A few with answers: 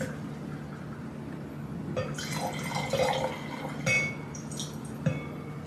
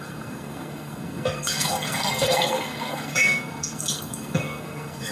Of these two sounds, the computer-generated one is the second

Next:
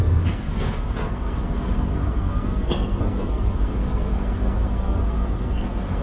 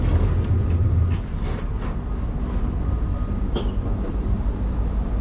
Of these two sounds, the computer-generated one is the first